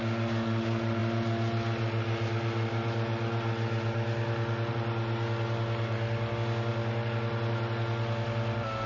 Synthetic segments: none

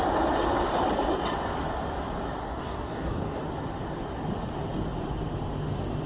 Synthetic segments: 2.4-3.4 (codec, DAC)

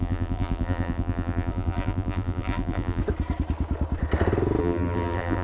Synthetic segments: 0.0-3.0 (vocoder, BigVGAN v2); 4.6-5.4

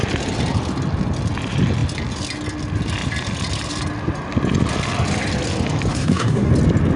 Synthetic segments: 5.9-6.5 (codec, SNAC)